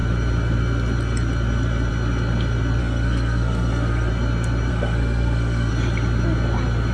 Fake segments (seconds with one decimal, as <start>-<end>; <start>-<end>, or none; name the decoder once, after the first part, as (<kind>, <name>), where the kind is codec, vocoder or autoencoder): 2.8-4.1 (codec, SNAC); 4.7-5.7